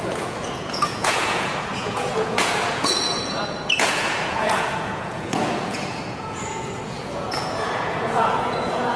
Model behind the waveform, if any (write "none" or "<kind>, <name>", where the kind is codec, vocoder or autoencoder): vocoder, Vocos